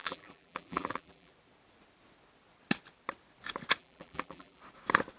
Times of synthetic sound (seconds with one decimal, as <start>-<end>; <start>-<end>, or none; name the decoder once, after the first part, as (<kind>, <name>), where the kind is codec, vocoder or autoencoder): 0.0-1.3 (vocoder, BigVGAN v2); 3.8-4.6